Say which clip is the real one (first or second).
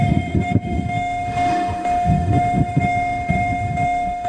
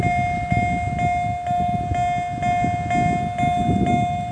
second